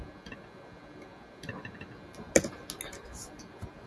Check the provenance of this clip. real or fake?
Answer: real